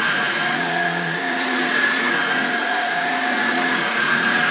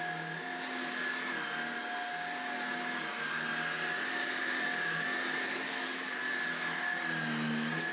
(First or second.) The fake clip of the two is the first